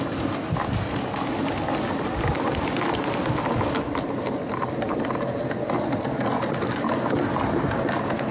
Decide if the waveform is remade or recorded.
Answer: recorded